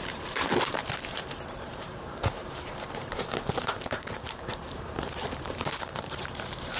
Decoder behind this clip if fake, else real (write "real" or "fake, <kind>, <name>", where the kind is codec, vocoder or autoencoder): fake, vocoder, BigVGAN v2